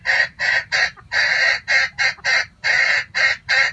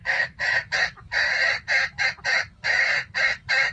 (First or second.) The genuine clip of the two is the first